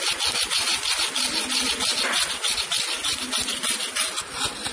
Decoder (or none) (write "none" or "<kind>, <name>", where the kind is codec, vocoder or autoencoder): none